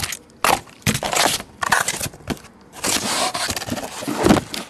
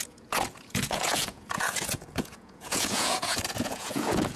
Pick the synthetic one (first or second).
second